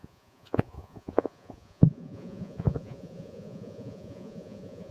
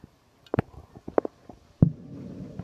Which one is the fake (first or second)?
first